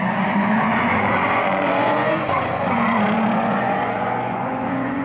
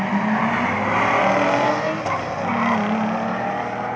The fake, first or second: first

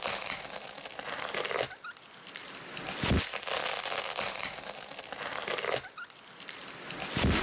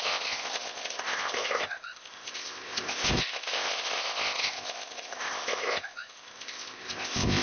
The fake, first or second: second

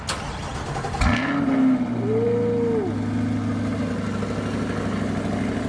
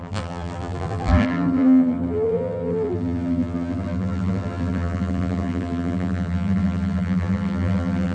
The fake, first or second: second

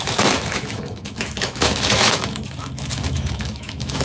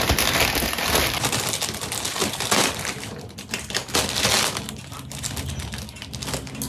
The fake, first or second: first